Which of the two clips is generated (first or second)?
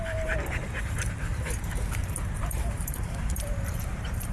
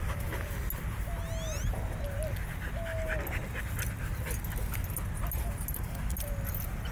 first